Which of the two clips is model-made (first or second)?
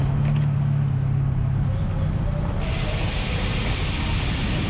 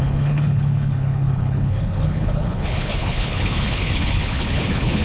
second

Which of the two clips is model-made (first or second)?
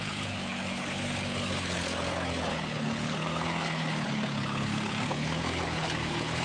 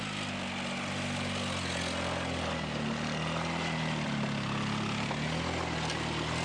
first